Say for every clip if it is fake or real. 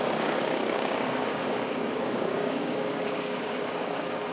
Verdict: fake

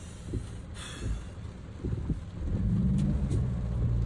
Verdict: real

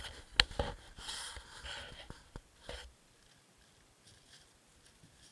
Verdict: real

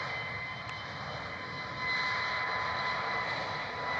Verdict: real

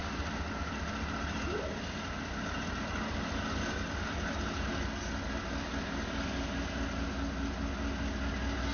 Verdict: real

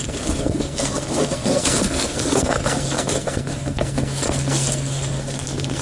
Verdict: fake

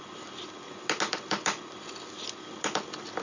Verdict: real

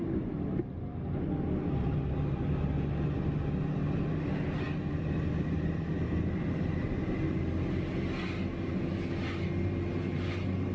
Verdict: real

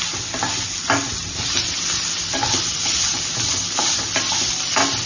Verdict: real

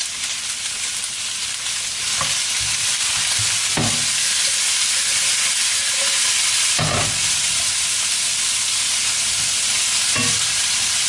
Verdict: real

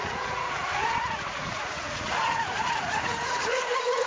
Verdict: fake